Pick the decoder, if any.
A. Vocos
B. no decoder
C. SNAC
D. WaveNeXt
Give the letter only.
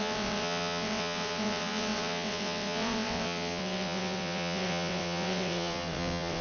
D